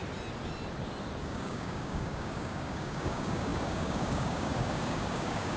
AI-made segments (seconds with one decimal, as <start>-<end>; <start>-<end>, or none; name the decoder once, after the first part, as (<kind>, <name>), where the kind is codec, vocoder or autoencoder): 1.2-5.6 (codec, DAC)